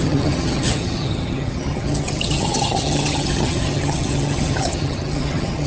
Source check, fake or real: fake